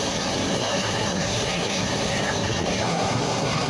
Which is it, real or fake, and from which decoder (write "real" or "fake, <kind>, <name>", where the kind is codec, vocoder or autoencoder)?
fake, codec, SNAC